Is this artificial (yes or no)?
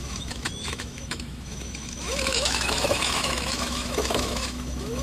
yes